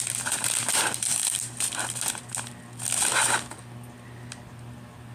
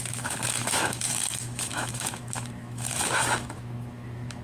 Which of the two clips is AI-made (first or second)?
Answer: second